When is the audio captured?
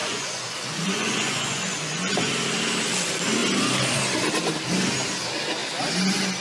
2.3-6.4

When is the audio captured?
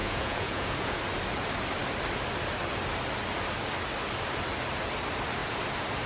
1.0-6.1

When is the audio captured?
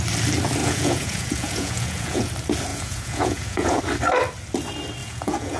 0.0-0.6; 2.3-2.7; 3.8-5.0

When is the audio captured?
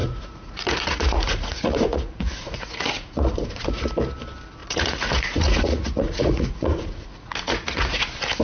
3.8-4.6; 8.0-8.4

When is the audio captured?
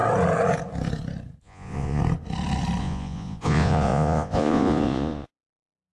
0.0-1.4; 2.0-2.8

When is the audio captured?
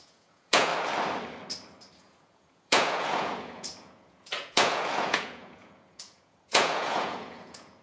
0.7-2.0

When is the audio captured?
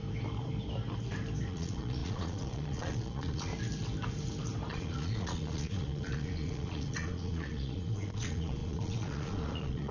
0.0-1.5; 3.5-4.7